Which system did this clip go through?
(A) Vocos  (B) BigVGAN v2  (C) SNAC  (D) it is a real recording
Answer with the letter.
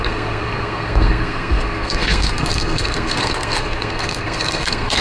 C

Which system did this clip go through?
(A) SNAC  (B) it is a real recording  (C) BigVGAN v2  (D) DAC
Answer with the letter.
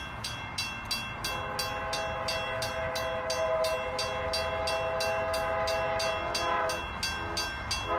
B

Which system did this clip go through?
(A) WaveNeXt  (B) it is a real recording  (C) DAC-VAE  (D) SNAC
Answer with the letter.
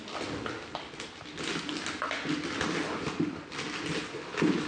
B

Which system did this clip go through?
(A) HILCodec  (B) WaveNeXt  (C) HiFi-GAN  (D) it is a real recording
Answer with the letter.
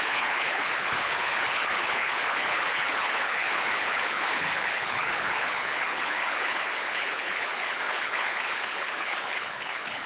A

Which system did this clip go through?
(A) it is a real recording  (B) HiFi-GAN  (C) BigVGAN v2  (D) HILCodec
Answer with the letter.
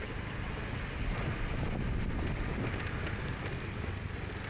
A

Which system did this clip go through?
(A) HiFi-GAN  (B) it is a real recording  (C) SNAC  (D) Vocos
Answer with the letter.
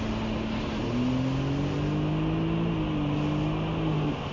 B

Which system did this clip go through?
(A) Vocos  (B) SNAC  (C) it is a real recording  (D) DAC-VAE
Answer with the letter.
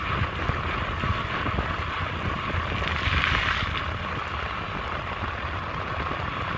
C